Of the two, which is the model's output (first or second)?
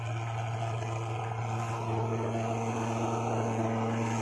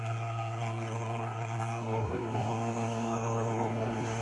second